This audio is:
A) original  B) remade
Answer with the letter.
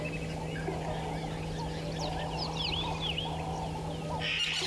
A